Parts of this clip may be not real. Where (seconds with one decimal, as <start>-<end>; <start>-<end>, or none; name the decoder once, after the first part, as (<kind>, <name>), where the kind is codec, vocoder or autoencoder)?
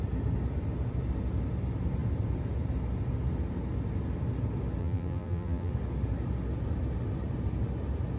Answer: 4.8-5.7 (vocoder, BigVGAN v2)